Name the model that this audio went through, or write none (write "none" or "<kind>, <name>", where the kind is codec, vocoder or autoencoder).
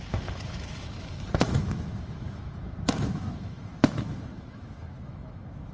autoencoder, DAC-VAE